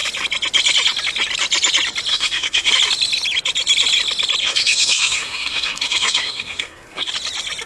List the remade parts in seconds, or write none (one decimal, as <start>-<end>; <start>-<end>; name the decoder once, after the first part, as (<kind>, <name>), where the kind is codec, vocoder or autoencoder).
2.1-2.7 (codec, SNAC); 4.4-7.1

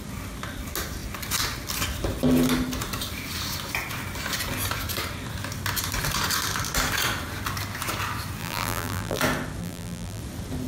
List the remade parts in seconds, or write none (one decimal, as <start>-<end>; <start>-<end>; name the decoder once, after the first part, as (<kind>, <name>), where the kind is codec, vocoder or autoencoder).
8.4-9.2 (vocoder, BigVGAN v2); 9.6-10.2

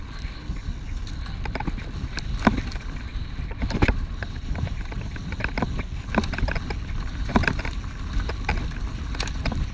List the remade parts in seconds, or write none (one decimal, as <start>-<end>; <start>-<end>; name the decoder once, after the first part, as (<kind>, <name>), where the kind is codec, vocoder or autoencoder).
3.1-5.3 (vocoder, BigVGAN v2)

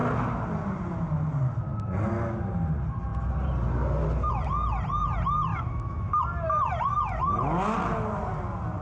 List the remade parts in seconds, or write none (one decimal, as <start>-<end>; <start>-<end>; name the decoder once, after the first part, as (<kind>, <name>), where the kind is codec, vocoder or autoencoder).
5.5-6.2 (autoencoder, DAC-VAE)

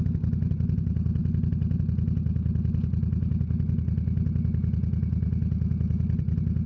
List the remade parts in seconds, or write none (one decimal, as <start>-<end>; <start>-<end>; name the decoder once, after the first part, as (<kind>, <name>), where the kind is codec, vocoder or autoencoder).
none

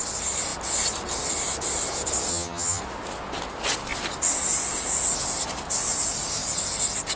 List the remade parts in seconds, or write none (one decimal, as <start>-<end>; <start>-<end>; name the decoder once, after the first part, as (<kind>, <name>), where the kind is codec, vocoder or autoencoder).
2.3-2.8 (vocoder, HiFi-GAN)

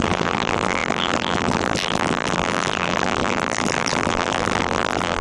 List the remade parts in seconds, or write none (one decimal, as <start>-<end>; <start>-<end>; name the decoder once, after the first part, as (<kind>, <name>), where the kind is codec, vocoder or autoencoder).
0.0-5.2 (vocoder, BigVGAN v2)

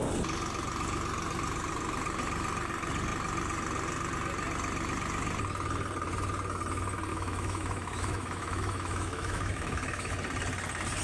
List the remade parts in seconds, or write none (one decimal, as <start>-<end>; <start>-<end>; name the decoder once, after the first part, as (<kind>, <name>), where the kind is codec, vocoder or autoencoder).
7.1-10.1 (autoencoder, DAC-VAE)